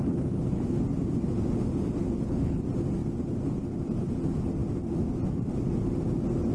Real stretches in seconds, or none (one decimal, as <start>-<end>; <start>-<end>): 0.8-2.0; 2.6-6.5